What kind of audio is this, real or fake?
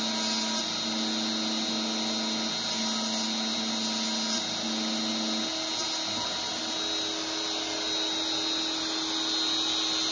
real